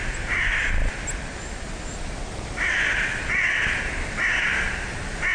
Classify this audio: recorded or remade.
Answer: recorded